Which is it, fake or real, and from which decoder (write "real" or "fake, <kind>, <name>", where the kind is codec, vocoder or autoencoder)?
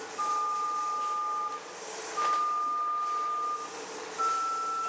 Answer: real